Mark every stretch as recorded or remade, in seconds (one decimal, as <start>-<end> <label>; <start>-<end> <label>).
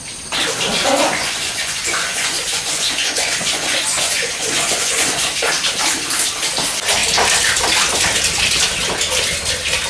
0.0-0.9 recorded; 0.9-5.3 remade; 5.3-9.9 recorded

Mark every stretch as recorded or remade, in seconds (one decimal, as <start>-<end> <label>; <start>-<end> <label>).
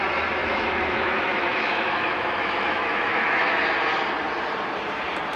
0.0-0.4 recorded; 0.4-3.6 remade; 3.6-5.4 recorded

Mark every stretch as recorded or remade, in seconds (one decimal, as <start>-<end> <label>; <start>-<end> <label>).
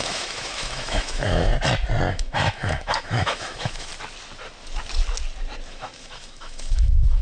0.0-1.5 remade; 1.5-2.1 recorded; 2.1-3.9 remade; 3.9-5.7 recorded; 5.7-7.2 remade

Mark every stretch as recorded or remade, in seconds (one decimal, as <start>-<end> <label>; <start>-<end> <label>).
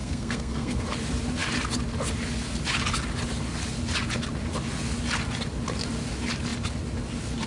0.0-0.8 remade; 0.8-7.5 recorded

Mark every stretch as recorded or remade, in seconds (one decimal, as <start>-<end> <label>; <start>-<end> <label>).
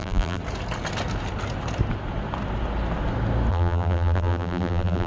0.0-0.4 remade; 0.4-3.5 recorded; 3.5-5.1 remade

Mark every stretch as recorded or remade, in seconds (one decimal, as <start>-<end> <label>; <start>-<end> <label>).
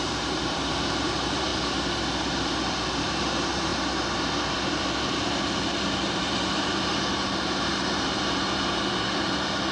0.0-1.5 remade; 1.5-2.3 recorded; 2.3-9.7 remade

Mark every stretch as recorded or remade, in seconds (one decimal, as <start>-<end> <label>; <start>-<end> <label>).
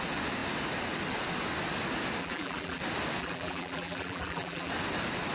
0.0-2.2 recorded; 2.2-2.8 remade; 2.8-3.2 recorded; 3.2-4.7 remade; 4.7-5.3 recorded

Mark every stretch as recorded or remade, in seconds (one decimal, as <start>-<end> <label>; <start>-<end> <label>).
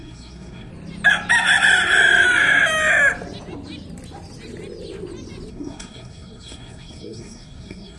0.0-0.7 remade; 0.7-5.5 recorded; 5.5-8.0 remade